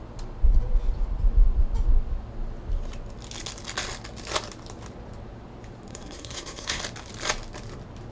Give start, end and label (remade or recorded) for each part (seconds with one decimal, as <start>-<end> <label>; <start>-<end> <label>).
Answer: 0.0-5.9 recorded; 5.9-6.8 remade; 6.8-8.1 recorded